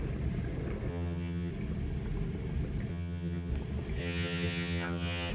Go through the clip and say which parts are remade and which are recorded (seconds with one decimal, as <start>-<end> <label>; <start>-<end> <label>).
0.0-0.9 recorded; 0.9-1.5 remade; 1.5-2.9 recorded; 2.9-3.5 remade; 3.5-4.0 recorded; 4.0-5.3 remade